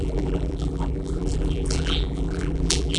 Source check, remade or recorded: remade